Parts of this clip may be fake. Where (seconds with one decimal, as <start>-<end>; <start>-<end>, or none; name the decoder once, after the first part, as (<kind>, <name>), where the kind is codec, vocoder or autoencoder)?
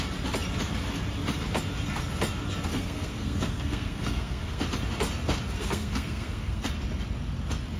2.7-4.6 (codec, SNAC); 5.6-6.7